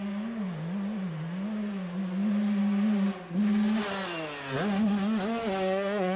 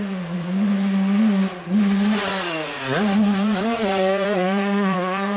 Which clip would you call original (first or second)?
first